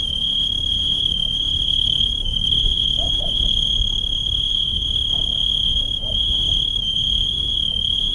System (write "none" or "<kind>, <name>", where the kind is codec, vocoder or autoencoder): autoencoder, DAC-VAE